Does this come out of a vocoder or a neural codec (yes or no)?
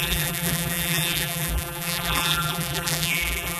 yes